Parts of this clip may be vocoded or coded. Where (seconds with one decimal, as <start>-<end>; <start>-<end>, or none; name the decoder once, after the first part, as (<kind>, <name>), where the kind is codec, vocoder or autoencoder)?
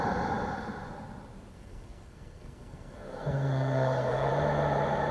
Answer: 1.5-4.3 (codec, SNAC)